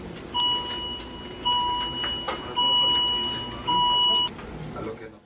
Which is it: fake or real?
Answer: real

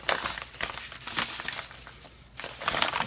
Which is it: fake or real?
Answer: real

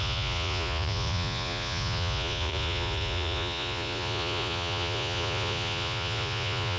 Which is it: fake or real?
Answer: fake